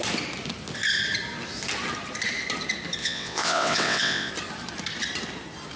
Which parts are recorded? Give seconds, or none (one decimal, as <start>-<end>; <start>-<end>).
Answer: 0.0-3.0; 4.3-5.8